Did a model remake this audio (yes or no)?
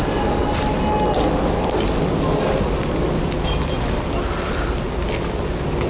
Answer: no